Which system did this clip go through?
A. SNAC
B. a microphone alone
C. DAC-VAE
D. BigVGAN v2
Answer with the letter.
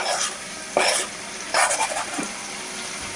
B